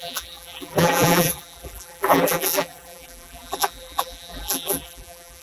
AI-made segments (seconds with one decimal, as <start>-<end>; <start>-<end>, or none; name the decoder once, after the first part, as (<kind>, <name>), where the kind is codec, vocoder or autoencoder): 0.0-5.4 (vocoder, BigVGAN v2)